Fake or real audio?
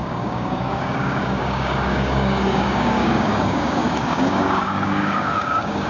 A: fake